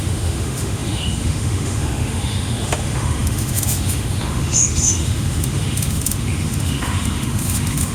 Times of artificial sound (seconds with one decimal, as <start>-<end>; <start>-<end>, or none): 0.0-7.9

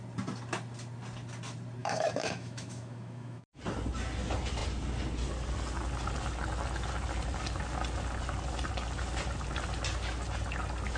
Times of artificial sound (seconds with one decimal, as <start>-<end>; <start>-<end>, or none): 1.8-3.6

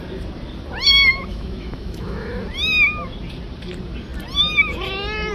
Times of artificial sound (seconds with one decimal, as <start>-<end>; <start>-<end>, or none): 1.3-2.3